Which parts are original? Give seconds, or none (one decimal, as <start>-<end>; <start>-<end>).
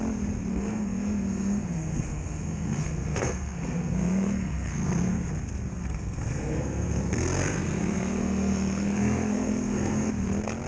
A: 0.0-0.5; 5.3-5.7; 10.1-10.7